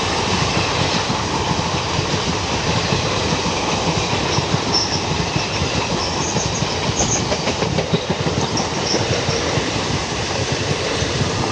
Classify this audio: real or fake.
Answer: fake